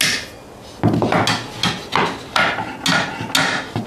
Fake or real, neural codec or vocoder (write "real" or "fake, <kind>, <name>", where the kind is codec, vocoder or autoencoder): real